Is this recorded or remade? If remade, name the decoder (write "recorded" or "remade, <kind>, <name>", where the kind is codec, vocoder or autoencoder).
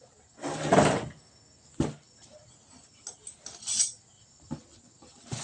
recorded